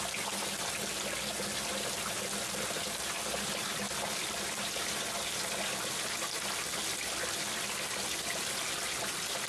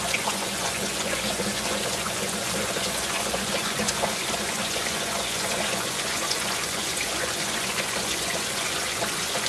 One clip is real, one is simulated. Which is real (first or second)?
first